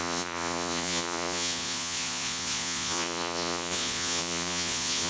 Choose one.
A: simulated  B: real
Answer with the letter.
A